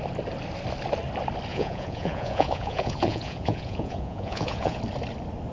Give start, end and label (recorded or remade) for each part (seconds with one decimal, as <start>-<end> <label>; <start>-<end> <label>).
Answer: 0.0-1.5 recorded; 1.5-4.8 remade; 4.8-5.5 recorded